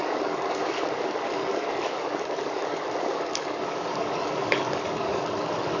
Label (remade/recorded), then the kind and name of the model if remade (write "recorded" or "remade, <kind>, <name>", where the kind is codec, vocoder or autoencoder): remade, codec, DAC